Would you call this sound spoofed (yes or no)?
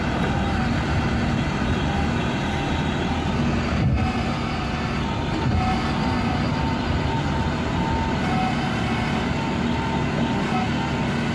no